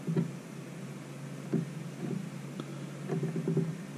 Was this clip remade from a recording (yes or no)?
no